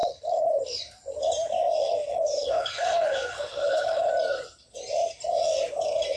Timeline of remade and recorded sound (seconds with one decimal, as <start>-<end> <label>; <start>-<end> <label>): 0.0-0.6 remade; 0.6-2.1 recorded; 2.1-4.1 remade; 4.1-6.2 recorded